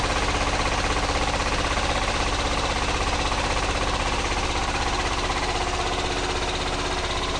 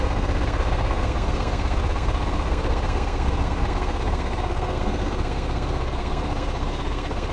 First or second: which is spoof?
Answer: second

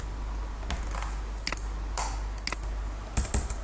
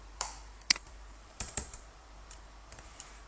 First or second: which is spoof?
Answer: second